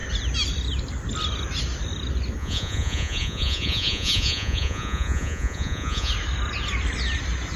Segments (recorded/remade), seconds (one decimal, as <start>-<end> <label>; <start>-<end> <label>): 0.0-2.4 recorded; 2.4-6.1 remade; 6.1-7.6 recorded